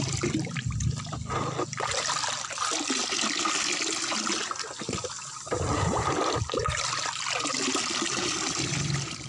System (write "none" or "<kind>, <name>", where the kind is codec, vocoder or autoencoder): none